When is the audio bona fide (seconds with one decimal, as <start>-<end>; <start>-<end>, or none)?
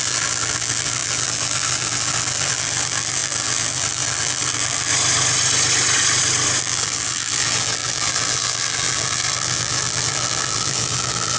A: 4.9-6.6